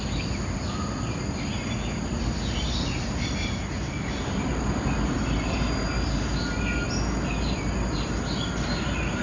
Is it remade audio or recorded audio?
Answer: recorded